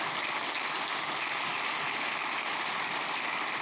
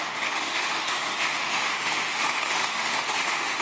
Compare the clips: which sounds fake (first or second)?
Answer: second